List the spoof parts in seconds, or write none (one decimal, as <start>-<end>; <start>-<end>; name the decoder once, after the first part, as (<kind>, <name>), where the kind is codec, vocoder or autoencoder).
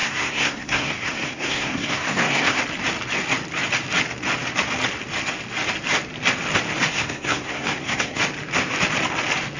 0.0-2.6 (codec, SNAC); 6.9-8.2